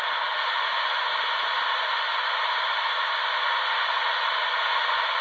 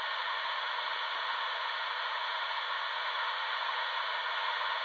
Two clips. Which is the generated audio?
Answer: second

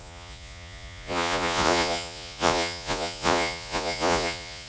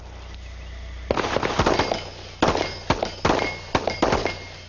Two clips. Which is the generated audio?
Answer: first